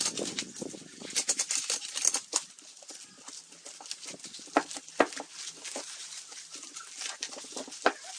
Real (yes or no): yes